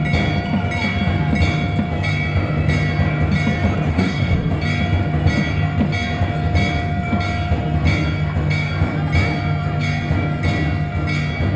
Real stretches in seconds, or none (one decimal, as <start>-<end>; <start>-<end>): 0.0-3.9; 4.5-11.6